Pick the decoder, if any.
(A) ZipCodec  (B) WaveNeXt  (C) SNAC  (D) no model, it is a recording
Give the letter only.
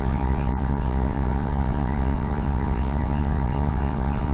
B